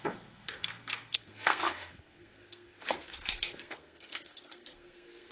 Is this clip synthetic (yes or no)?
yes